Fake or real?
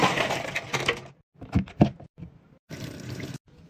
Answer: real